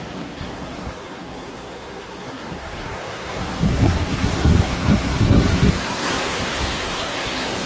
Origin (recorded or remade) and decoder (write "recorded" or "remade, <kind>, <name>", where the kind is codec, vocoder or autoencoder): remade, codec, SNAC